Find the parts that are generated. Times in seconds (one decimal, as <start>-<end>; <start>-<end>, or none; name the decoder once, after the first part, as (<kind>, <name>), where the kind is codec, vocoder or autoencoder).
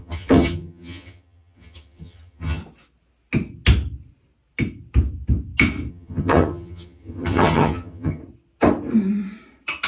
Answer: 0.0-2.6 (vocoder, HiFi-GAN); 5.9-8.2